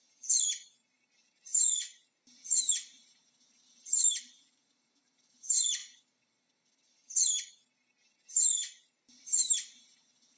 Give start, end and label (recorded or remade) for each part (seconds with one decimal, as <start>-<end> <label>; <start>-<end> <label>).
0.0-5.8 remade; 5.8-8.1 recorded; 8.1-10.4 remade